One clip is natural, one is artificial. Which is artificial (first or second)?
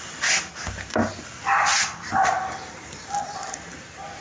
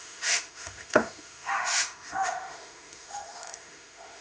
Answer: second